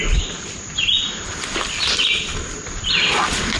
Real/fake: real